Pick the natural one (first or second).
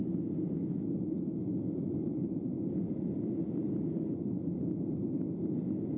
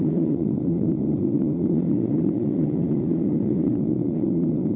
first